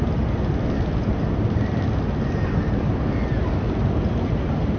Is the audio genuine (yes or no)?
yes